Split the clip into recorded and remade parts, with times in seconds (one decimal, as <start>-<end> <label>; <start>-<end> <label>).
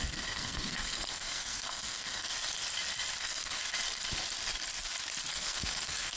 0.0-2.3 remade; 2.3-3.2 recorded; 3.2-3.6 remade; 3.6-5.3 recorded; 5.3-6.2 remade